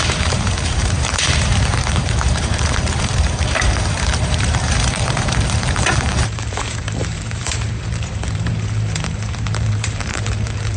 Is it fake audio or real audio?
fake